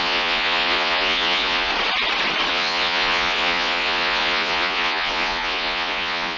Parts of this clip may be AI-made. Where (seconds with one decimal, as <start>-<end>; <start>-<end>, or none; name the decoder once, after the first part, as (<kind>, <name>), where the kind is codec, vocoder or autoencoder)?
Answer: 0.0-1.7 (vocoder, Vocos); 2.5-6.4